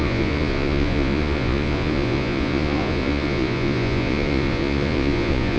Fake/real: fake